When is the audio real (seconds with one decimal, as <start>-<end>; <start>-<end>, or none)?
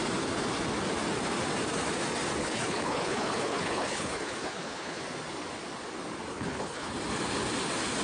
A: 0.0-2.4; 5.0-6.3; 6.9-8.0